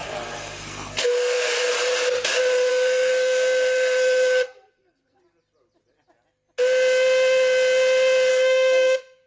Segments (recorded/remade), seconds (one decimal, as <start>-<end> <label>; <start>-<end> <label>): 0.0-1.7 remade; 1.7-2.7 recorded; 2.7-5.2 remade; 5.2-8.3 recorded; 8.3-9.3 remade